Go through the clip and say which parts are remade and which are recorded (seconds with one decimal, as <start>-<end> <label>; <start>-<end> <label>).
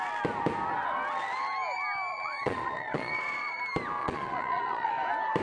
0.0-2.1 recorded; 2.1-3.6 remade; 3.6-4.0 recorded; 4.0-4.9 remade; 4.9-5.4 recorded